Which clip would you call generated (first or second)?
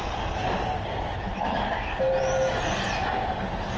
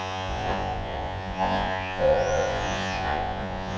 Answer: second